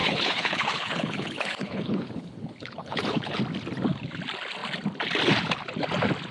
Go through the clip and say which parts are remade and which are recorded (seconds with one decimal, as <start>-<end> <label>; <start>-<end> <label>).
0.0-3.4 remade; 3.4-6.3 recorded